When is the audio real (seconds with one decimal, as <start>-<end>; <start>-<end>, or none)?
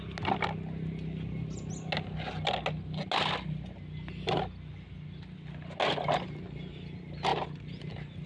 0.0-8.3